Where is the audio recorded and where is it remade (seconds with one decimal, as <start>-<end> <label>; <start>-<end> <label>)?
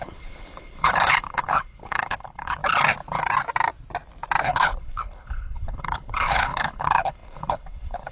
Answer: 0.0-2.6 remade; 2.6-4.4 recorded; 4.4-8.1 remade